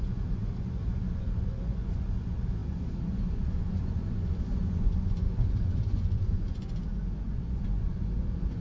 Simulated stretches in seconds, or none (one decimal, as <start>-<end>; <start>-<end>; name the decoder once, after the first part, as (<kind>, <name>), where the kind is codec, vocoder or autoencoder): 0.0-8.6 (vocoder, Vocos)